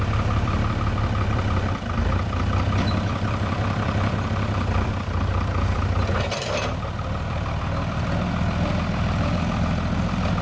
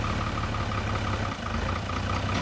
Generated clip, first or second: first